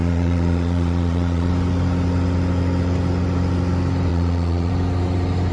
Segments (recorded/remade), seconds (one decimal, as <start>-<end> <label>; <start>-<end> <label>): 0.0-1.5 remade; 1.5-4.1 recorded; 4.1-4.7 remade; 4.7-5.5 recorded